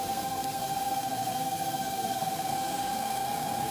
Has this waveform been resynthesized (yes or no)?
yes